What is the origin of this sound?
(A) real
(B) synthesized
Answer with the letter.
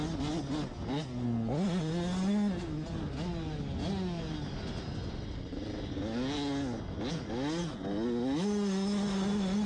A